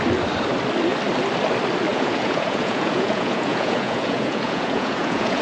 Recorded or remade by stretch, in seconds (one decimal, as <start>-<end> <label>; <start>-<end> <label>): 0.0-1.9 recorded; 1.9-5.4 remade